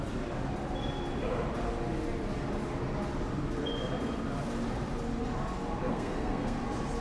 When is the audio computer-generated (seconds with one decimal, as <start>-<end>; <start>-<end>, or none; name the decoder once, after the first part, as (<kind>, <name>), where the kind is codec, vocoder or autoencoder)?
5.9-6.6 (codec, SNAC)